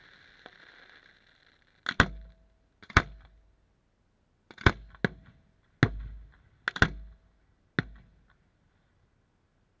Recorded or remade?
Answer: recorded